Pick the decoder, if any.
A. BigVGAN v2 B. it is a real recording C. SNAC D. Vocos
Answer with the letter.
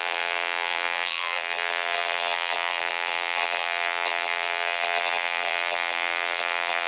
A